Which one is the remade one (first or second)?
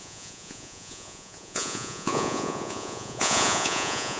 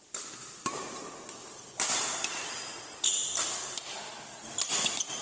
first